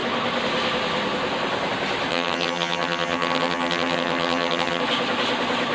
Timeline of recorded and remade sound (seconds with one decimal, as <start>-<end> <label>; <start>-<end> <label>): 0.0-2.1 recorded; 2.1-4.8 remade; 4.8-5.7 recorded